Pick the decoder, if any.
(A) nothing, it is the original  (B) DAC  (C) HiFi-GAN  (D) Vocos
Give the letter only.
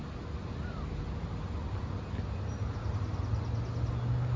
A